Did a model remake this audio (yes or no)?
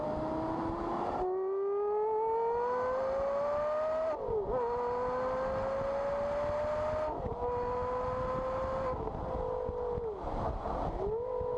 no